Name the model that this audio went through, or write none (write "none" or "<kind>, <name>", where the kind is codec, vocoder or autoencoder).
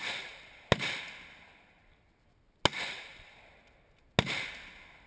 none